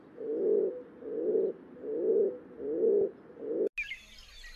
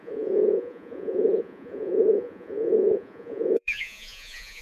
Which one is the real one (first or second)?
first